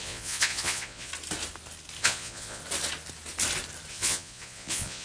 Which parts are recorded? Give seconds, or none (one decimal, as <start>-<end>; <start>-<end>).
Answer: 1.1-2.0; 2.6-3.9